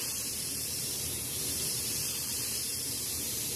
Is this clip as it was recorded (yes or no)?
no